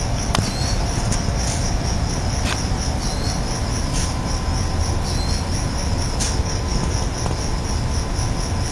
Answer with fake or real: real